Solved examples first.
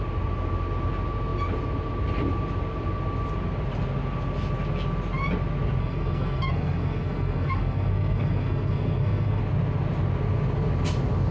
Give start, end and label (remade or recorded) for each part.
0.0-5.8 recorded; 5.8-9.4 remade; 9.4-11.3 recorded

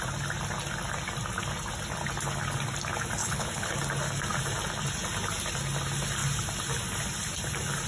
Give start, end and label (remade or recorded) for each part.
0.0-3.2 recorded; 3.2-3.7 remade; 3.7-7.9 recorded

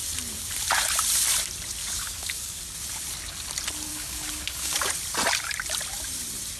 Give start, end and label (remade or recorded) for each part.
0.0-1.8 recorded; 1.8-2.6 remade; 2.6-3.9 recorded; 3.9-4.9 remade; 4.9-6.6 recorded

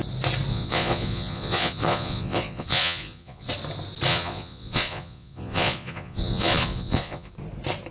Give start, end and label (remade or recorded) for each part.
0.0-0.5 recorded; 0.5-3.5 remade; 3.5-4.1 recorded; 4.1-7.3 remade; 7.3-7.9 recorded

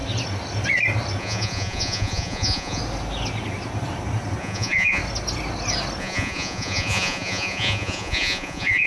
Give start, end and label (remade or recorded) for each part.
0.0-1.2 recorded; 1.2-2.8 remade; 2.8-4.4 recorded; 4.4-5.0 remade; 5.0-6.0 recorded; 6.0-8.9 remade

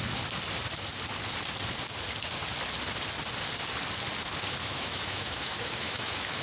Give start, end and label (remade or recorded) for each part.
0.0-4.6 recorded; 4.6-6.4 remade

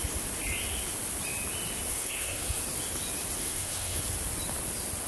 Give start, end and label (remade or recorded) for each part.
0.0-1.9 recorded; 1.9-2.6 remade; 2.6-3.4 recorded; 3.4-4.0 remade; 4.0-5.1 recorded